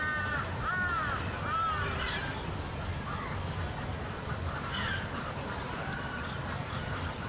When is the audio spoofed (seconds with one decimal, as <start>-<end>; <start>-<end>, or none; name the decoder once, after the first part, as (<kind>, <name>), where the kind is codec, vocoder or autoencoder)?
0.0-0.7 (vocoder, BigVGAN v2); 4.3-7.3